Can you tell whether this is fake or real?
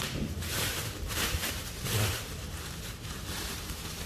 fake